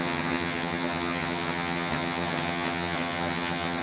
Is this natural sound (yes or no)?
no